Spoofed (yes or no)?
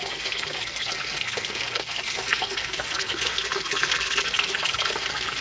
yes